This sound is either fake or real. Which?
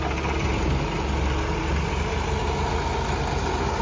real